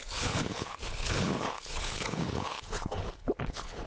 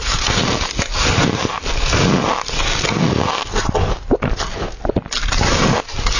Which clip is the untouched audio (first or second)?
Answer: second